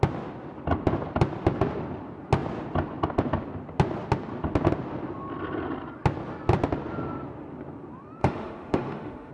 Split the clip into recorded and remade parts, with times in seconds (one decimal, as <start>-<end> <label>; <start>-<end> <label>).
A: 0.0-8.2 recorded; 8.2-9.3 remade